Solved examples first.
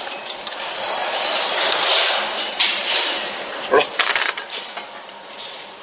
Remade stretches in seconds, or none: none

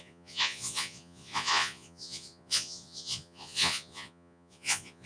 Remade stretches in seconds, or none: 0.0-5.1

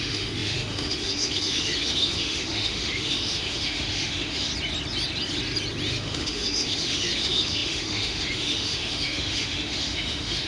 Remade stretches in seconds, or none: 0.0-4.5; 5.9-10.5

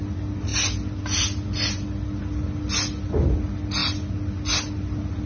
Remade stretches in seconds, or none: none